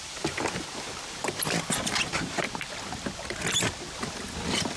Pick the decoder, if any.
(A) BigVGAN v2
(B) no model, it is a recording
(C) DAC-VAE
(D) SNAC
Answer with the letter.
B